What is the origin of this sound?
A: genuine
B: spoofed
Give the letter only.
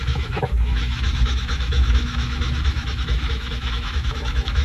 B